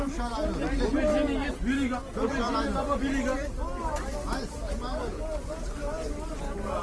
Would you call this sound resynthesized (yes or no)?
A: no